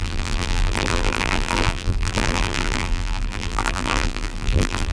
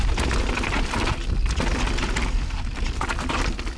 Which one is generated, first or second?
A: first